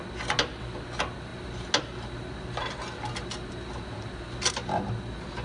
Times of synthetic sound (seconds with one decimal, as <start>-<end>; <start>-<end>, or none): none